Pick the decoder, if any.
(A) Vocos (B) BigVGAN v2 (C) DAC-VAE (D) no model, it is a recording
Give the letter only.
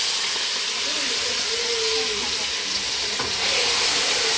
D